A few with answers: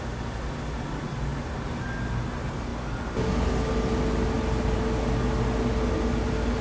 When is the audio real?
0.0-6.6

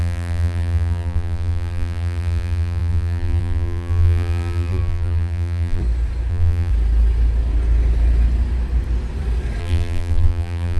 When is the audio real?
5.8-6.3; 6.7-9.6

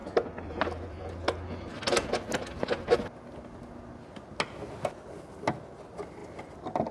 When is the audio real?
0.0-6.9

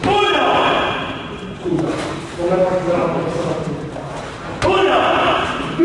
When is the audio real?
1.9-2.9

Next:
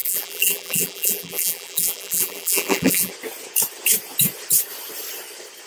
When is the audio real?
3.1-5.7

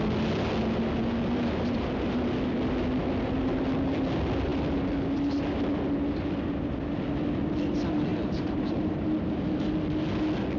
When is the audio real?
0.0-8.1; 9.4-10.6

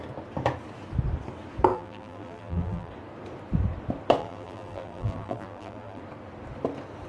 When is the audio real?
0.0-1.7; 2.9-4.2; 6.0-7.1

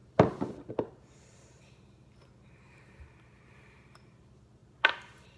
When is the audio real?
none